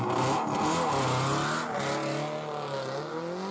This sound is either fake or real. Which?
real